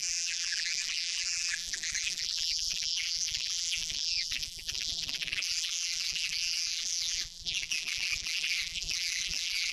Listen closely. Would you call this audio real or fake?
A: fake